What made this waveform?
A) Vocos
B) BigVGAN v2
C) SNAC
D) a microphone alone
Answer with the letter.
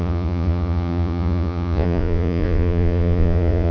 A